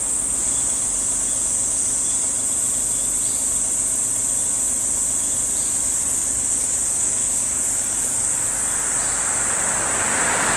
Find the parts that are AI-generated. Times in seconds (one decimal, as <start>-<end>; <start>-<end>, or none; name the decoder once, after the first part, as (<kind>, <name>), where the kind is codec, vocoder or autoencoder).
6.0-8.6 (codec, DAC)